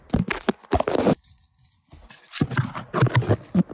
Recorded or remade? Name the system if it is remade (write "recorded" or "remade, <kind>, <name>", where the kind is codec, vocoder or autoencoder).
recorded